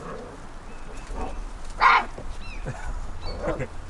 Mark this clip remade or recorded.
recorded